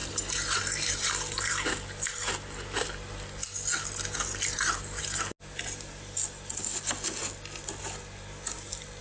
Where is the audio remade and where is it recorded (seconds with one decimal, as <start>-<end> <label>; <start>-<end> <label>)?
0.0-9.0 recorded